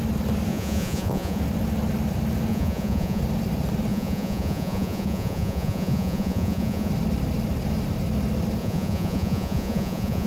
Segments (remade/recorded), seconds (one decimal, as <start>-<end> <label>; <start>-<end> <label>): 0.0-0.5 recorded; 0.5-1.4 remade; 1.4-2.5 recorded; 2.5-3.2 remade; 3.2-3.9 recorded; 3.9-6.9 remade; 6.9-8.6 recorded; 8.6-10.3 remade